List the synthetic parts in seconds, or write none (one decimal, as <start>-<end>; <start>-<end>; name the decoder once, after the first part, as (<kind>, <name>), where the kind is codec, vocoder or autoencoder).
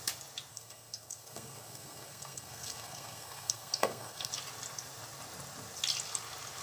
0.5-4.3 (codec, SNAC)